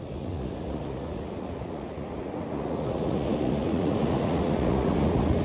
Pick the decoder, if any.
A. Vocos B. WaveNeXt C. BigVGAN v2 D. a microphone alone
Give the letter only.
A